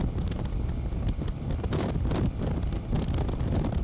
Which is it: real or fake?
fake